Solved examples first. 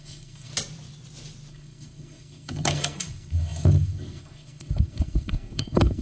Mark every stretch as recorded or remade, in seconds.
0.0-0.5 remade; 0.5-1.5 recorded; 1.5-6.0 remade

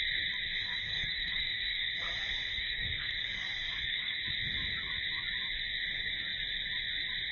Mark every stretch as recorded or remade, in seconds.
0.0-0.6 recorded; 0.6-1.9 remade; 1.9-2.5 recorded; 2.5-4.2 remade; 4.2-7.3 recorded

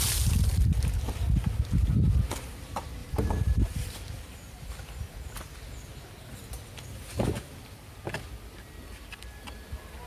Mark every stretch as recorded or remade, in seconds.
0.0-3.0 recorded; 3.0-4.8 remade; 4.8-10.1 recorded

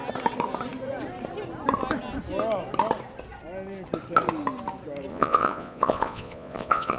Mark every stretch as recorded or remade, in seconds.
0.0-5.1 recorded; 5.1-7.0 remade